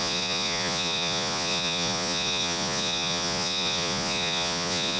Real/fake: fake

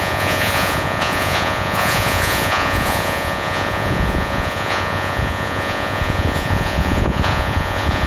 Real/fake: fake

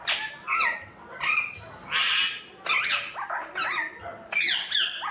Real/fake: real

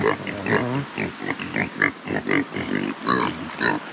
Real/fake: real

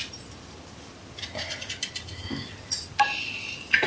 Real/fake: real